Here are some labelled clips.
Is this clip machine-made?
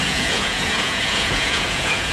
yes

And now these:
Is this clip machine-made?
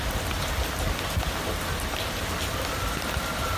no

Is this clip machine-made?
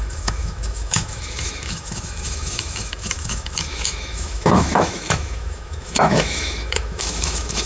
yes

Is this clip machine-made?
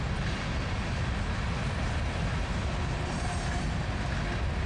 no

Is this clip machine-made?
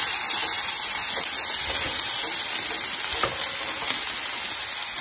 no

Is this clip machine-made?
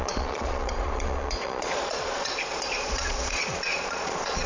yes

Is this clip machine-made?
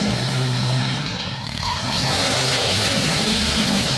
yes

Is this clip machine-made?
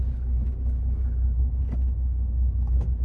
no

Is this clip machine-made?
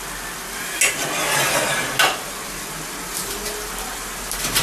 no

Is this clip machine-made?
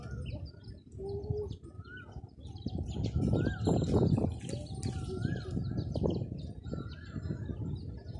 no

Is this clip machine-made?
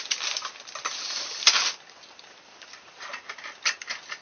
no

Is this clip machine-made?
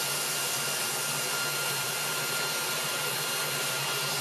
no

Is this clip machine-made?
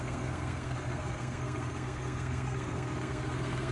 yes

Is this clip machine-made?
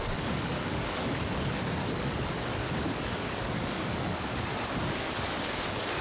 yes